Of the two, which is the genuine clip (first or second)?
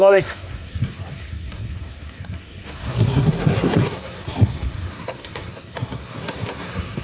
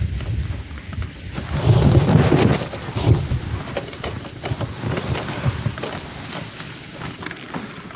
second